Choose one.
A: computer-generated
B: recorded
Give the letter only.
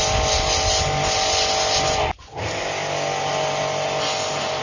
B